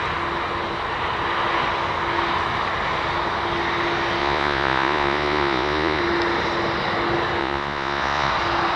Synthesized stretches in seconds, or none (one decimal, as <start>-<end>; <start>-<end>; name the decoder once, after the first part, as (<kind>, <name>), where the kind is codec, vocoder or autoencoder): 4.2-6.0 (vocoder, Vocos); 7.4-8.3